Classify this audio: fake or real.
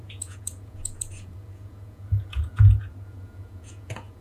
fake